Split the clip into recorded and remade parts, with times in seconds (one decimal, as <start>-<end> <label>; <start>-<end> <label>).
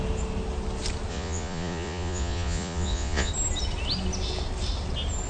0.0-1.1 recorded; 1.1-3.3 remade; 3.3-5.3 recorded